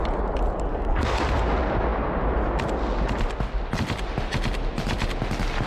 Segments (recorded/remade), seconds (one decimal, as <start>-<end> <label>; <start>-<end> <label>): 0.0-0.7 recorded; 0.7-1.2 remade; 1.2-5.7 recorded